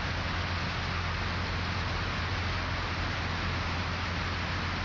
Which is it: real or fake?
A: real